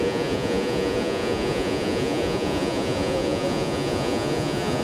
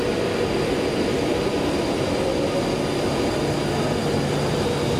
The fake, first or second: first